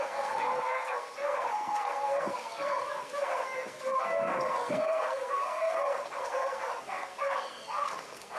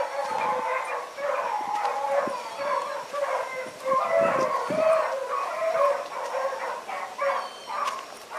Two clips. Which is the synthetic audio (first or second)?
first